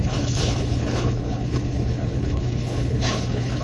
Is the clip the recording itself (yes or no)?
no